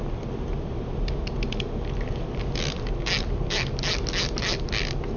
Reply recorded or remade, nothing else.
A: recorded